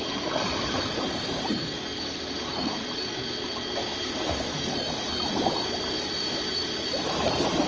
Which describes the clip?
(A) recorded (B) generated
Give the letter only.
B